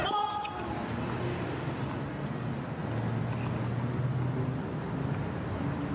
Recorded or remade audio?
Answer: recorded